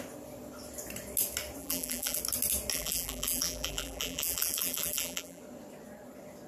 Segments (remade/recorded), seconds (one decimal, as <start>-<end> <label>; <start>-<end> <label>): 0.0-1.6 recorded; 1.6-2.2 remade; 2.2-2.7 recorded; 2.7-5.4 remade; 5.4-6.5 recorded